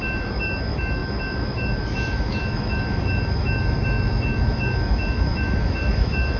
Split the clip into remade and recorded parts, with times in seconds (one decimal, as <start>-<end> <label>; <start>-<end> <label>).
0.0-6.4 remade